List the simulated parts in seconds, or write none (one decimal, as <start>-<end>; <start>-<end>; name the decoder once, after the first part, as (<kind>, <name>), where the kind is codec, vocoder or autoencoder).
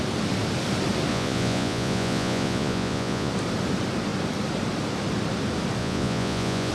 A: 1.1-3.3 (vocoder, Vocos); 5.8-6.7